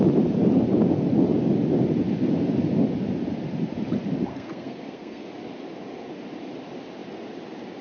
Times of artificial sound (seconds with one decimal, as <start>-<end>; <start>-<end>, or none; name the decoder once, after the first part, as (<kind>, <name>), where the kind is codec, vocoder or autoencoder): 4.3-5.3 (codec, SNAC)